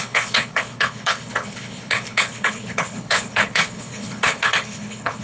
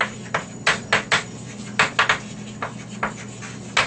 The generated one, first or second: first